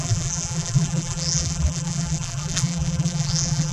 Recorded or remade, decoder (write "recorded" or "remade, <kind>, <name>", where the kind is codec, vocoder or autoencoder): remade, vocoder, BigVGAN v2